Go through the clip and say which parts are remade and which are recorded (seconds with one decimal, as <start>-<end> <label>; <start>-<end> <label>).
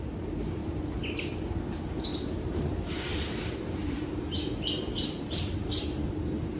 0.0-0.6 remade; 0.6-1.7 recorded; 1.7-6.6 remade